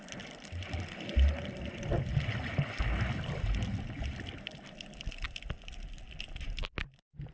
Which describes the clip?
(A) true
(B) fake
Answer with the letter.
A